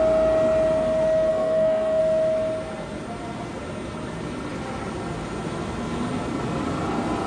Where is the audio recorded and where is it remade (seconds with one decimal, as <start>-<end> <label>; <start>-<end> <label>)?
0.0-1.3 recorded; 1.3-2.0 remade; 2.0-7.3 recorded